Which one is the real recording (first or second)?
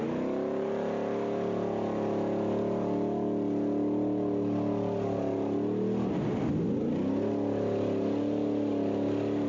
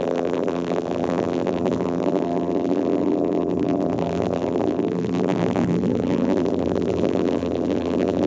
first